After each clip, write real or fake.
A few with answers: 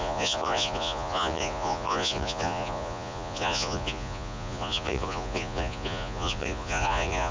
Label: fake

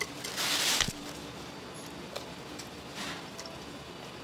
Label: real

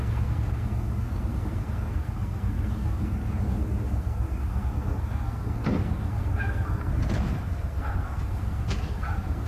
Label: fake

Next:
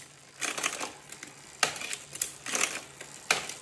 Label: real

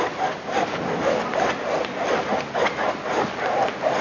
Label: real